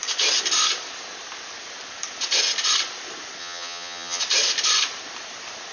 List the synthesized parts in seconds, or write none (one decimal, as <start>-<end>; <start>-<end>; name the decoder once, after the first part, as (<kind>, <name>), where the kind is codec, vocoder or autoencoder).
3.4-4.2 (vocoder, HiFi-GAN)